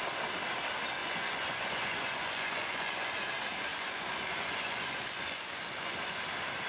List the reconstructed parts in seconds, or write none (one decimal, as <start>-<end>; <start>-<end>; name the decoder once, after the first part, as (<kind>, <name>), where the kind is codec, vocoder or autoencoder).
1.0-3.1 (vocoder, Vocos); 3.7-6.2